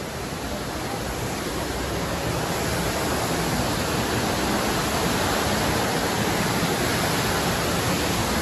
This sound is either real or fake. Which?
real